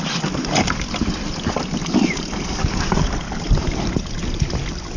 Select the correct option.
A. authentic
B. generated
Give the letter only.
A